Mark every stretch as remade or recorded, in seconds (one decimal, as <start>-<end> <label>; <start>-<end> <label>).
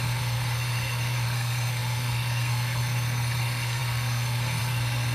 0.0-5.1 remade